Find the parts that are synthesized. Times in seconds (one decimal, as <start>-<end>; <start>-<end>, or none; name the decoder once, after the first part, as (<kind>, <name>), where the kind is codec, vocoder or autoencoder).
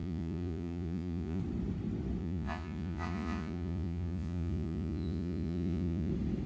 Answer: 0.0-1.4 (vocoder, Vocos); 2.2-6.1